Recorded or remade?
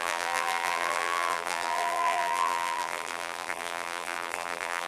remade